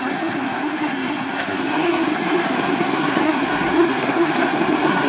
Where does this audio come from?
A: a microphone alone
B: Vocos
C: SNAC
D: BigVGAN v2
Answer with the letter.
C